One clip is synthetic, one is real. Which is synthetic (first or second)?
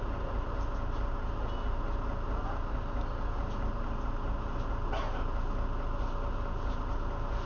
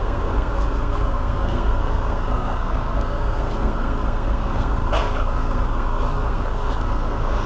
second